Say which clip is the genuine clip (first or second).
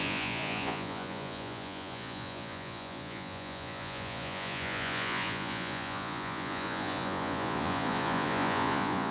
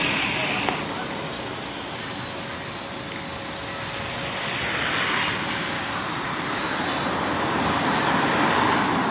second